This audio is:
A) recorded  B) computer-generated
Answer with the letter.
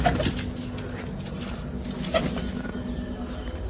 A